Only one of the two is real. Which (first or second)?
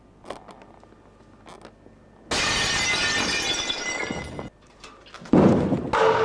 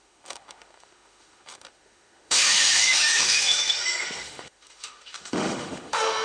first